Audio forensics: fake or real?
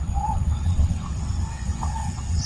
fake